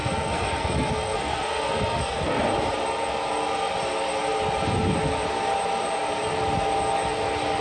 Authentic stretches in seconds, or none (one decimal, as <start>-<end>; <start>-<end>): 2.4-7.6